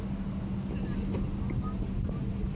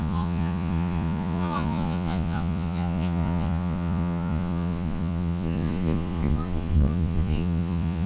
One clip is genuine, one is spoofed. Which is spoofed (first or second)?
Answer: second